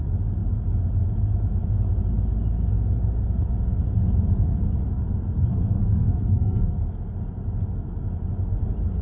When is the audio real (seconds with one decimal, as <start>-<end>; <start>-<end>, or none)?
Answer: 0.0-5.4; 6.8-9.0